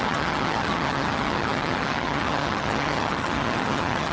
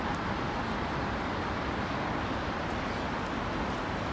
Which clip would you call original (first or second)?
second